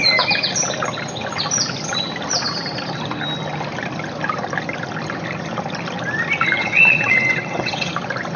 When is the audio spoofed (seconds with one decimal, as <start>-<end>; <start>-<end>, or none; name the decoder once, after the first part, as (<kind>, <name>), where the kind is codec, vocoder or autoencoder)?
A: 6.6-7.9 (vocoder, WaveNeXt)